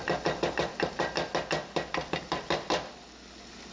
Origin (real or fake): real